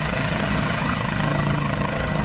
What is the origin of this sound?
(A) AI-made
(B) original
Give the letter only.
A